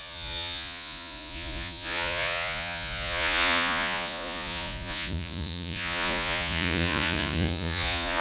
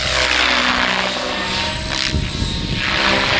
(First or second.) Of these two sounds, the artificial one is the first